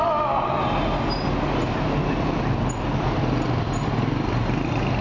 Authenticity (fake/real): real